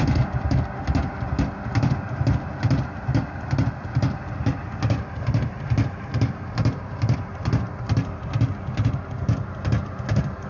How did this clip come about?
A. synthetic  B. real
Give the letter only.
B